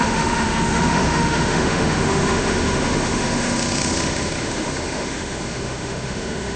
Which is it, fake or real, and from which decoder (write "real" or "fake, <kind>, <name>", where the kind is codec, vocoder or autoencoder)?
fake, autoencoder, DAC-VAE